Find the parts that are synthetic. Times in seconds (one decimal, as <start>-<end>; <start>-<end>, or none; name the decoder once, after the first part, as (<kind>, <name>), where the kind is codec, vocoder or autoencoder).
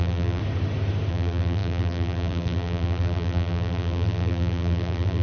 0.0-0.4 (vocoder, BigVGAN v2); 1.1-5.2